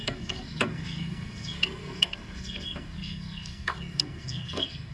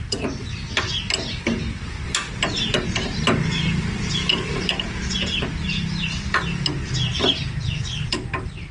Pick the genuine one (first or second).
second